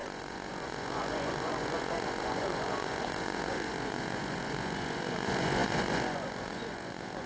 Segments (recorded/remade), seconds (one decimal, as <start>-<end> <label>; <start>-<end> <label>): 0.0-7.3 remade